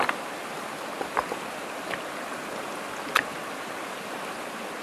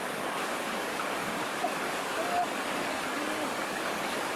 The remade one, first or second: second